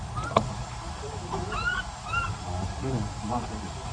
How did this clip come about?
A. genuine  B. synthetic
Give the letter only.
A